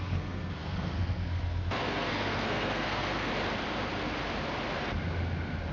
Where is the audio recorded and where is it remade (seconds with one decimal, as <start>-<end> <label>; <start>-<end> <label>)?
0.0-3.3 remade; 3.3-5.7 recorded